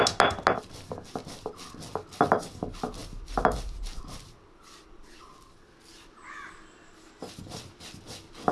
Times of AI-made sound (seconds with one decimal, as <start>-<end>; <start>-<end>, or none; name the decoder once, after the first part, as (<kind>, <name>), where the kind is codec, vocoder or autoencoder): none